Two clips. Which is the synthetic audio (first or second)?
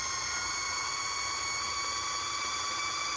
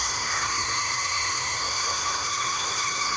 second